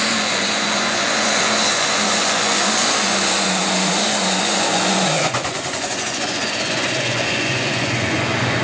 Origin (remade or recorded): remade